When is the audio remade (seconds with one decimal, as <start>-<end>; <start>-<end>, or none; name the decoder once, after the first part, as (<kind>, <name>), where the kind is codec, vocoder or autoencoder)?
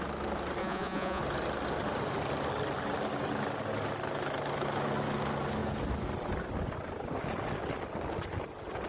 0.6-1.2 (vocoder, Vocos)